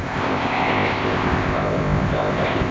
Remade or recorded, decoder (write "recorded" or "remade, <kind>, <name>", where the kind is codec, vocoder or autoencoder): remade, codec, ZipCodec